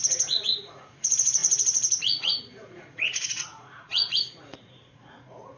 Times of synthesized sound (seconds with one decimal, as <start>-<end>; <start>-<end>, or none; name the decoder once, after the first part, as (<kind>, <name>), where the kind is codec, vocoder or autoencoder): 0.0-5.6 (vocoder, Vocos)